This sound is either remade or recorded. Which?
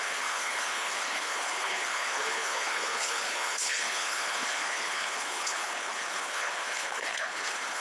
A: remade